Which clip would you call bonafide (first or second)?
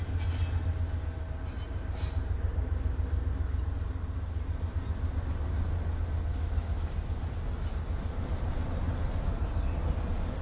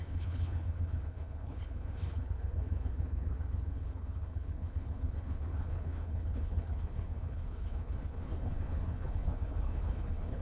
first